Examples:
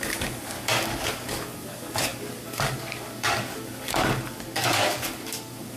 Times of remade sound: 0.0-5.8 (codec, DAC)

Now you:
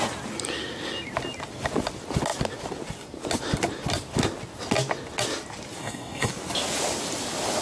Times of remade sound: 5.8-6.3 (codec, DAC)

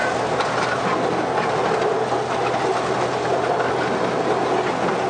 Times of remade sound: none

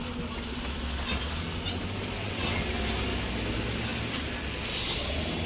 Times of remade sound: 2.2-2.8 (vocoder, WaveNeXt)

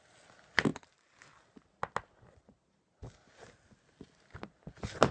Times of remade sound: none

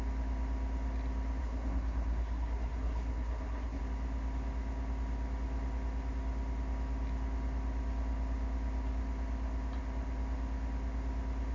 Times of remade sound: 1.4-3.8 (codec, SNAC)

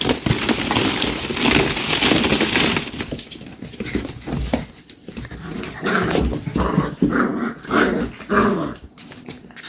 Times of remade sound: none